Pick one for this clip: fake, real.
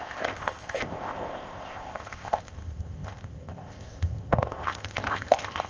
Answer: fake